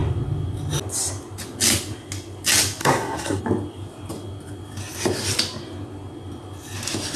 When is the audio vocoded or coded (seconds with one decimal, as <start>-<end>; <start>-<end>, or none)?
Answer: 2.8-3.4